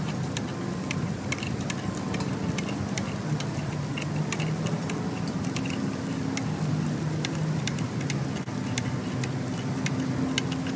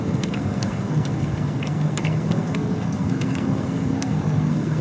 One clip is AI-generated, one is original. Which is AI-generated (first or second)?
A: second